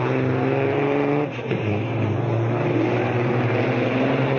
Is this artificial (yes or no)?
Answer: yes